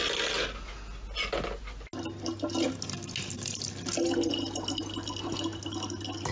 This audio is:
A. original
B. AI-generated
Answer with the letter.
A